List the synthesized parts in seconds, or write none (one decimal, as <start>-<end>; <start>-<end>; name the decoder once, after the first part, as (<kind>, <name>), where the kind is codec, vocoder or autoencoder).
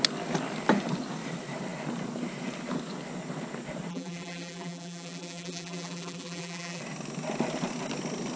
3.9-6.8 (vocoder, BigVGAN v2)